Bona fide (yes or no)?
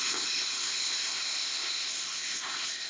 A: no